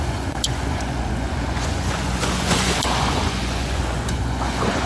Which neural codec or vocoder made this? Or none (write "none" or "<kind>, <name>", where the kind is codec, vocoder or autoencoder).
vocoder, Vocos